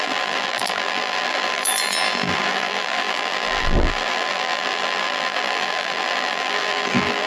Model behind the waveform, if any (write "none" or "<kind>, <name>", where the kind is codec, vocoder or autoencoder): vocoder, BigVGAN v2